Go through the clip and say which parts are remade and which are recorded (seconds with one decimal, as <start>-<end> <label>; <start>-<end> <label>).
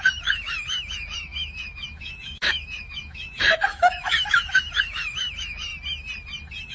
0.0-5.7 remade; 5.7-6.7 recorded